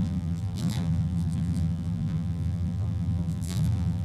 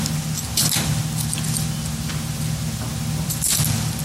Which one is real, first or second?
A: second